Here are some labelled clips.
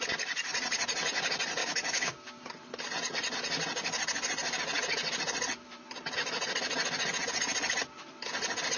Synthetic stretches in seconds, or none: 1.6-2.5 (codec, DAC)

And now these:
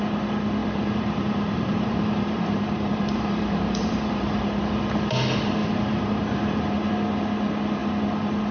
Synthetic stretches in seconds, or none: 0.6-4.6 (vocoder, BigVGAN v2); 5.6-6.9

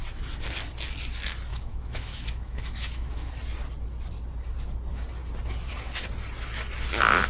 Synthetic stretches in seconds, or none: 1.5-3.3 (autoencoder, DAC-VAE)

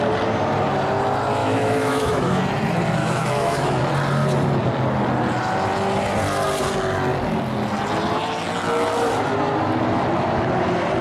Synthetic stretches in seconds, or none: 1.4-2.4 (autoencoder, DAC-VAE); 3.0-3.9

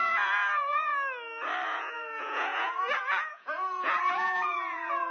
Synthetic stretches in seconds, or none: 0.0-0.9 (vocoder, Vocos); 1.8-5.1